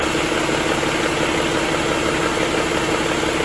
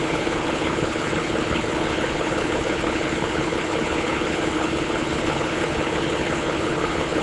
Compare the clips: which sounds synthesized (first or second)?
second